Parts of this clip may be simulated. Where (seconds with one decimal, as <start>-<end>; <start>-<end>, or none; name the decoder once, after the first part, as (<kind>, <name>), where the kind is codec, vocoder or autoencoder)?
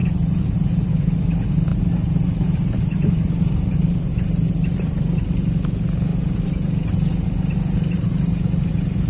0.0-1.0 (vocoder, BigVGAN v2); 1.7-5.2; 6.1-9.1